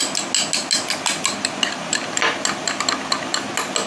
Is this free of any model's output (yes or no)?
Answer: yes